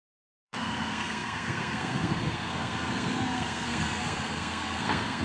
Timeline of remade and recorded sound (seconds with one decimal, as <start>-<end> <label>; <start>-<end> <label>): 0.0-5.2 remade